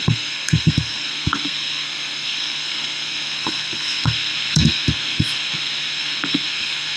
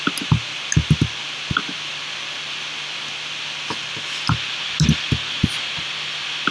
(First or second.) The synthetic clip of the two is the first